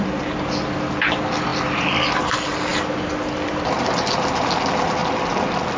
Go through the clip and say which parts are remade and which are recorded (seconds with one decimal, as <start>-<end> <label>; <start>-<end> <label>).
0.0-5.8 recorded